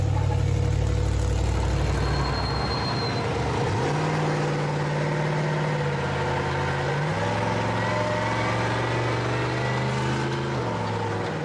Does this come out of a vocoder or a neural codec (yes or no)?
no